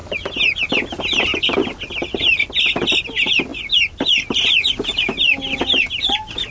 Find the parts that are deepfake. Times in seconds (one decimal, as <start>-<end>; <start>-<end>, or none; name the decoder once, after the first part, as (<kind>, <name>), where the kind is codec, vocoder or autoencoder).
none